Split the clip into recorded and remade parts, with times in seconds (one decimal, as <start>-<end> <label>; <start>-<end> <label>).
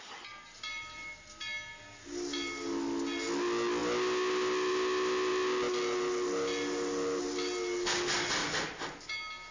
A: 0.0-9.5 recorded